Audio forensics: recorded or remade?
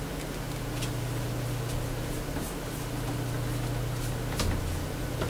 recorded